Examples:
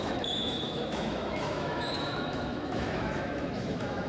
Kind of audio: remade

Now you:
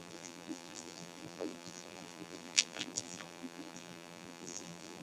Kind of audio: remade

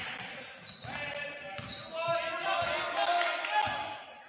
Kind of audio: recorded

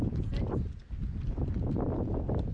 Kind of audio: recorded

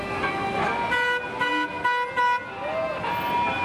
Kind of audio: recorded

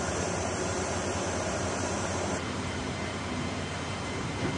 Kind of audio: remade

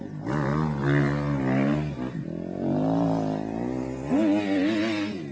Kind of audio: recorded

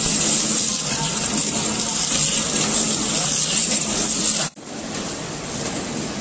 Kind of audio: recorded